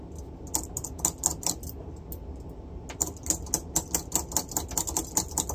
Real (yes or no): yes